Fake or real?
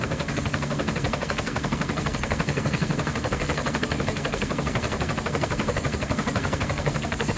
fake